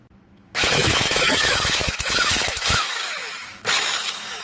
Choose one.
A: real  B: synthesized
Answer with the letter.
B